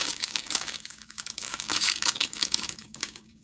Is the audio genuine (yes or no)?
no